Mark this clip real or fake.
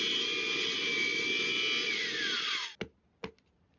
real